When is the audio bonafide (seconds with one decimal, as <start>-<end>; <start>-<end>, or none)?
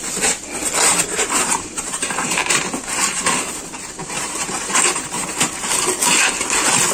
0.0-0.9; 3.5-4.0; 5.5-6.9